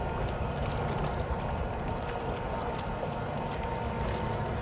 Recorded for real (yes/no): yes